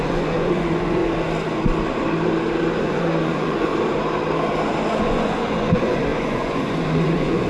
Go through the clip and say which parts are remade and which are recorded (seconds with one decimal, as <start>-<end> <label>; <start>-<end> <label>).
0.0-1.0 remade; 1.0-2.8 recorded; 2.8-3.7 remade; 3.7-5.0 recorded; 5.0-7.5 remade